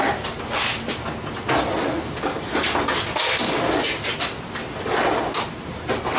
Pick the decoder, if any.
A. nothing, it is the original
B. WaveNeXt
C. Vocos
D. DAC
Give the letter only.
A